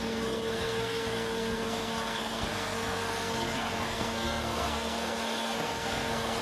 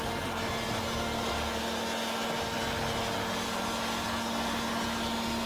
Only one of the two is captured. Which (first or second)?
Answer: second